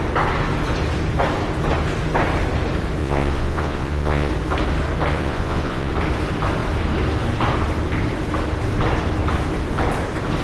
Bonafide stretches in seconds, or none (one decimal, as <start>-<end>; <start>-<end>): 0.0-3.0; 4.3-5.1; 5.9-10.4